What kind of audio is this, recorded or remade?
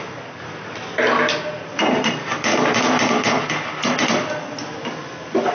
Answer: recorded